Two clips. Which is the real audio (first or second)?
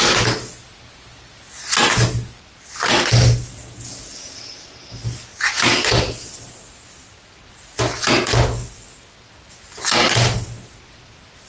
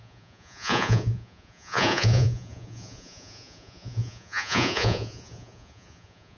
first